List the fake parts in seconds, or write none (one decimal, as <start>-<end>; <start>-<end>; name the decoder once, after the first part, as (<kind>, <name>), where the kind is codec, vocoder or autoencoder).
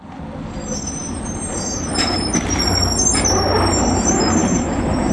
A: 4.4-5.1 (vocoder, BigVGAN v2)